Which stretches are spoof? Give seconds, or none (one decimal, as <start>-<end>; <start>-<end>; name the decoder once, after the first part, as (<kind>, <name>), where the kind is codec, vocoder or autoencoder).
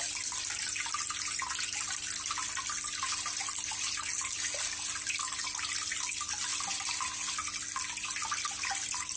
none